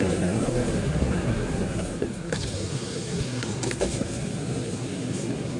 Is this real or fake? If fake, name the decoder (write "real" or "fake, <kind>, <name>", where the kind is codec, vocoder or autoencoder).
fake, codec, SNAC